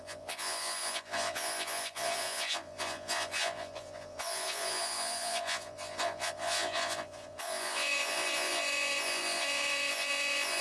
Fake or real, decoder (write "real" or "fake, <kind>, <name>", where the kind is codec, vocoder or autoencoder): fake, vocoder, Vocos